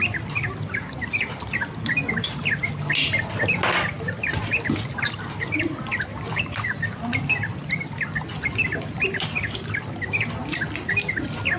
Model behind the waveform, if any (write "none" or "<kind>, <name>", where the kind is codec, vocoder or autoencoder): none